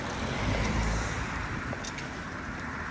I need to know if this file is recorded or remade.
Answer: remade